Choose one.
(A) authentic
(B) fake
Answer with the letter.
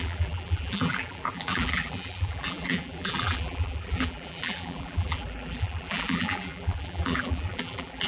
B